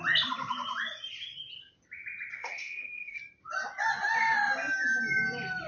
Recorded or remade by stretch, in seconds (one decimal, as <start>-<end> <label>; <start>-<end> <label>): 0.0-2.4 recorded; 2.4-3.2 remade; 3.2-5.7 recorded